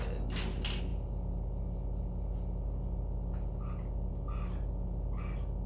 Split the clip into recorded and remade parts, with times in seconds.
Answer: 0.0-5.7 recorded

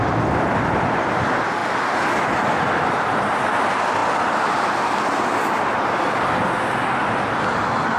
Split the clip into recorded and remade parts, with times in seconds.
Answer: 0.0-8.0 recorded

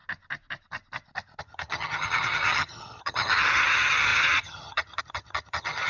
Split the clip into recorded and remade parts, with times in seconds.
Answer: 0.0-1.4 recorded; 1.4-5.9 remade